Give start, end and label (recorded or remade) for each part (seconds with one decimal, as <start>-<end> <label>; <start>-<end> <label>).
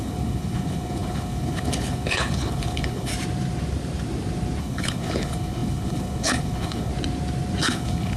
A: 0.0-3.1 remade; 3.1-4.6 recorded; 4.6-6.9 remade; 6.9-7.6 recorded; 7.6-8.2 remade